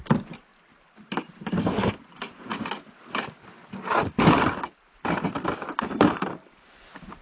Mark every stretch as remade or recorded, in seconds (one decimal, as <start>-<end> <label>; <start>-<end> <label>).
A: 0.0-0.5 remade; 0.5-1.9 recorded; 1.9-2.5 remade; 2.5-3.2 recorded; 3.2-7.2 remade